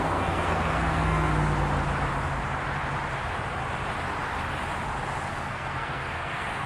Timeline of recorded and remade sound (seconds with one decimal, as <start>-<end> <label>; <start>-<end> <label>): 0.0-1.3 remade; 1.3-5.3 recorded; 5.3-6.7 remade